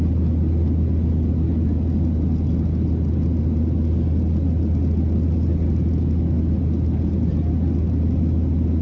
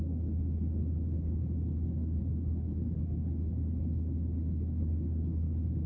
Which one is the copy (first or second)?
second